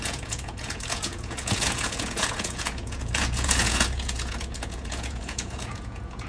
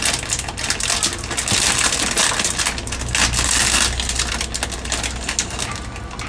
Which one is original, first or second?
second